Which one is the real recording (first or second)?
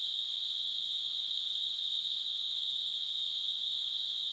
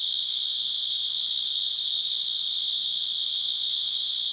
second